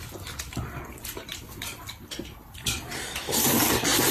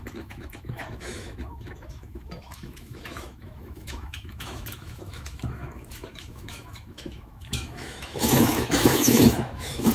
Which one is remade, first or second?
second